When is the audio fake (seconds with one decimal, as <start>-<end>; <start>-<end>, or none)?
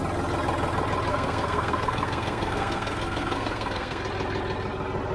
1.1-4.0